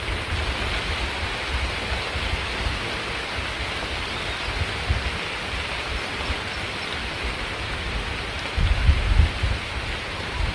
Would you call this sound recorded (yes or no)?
yes